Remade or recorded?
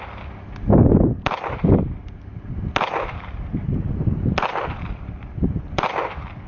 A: recorded